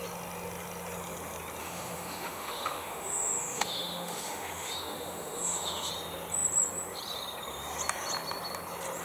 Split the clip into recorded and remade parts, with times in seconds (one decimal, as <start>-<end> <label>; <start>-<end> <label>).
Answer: 0.0-1.6 recorded; 1.6-5.9 remade; 5.9-9.0 recorded